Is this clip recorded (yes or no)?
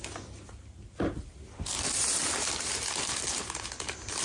yes